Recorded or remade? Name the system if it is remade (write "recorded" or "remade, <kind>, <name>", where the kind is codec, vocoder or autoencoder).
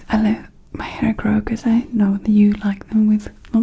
recorded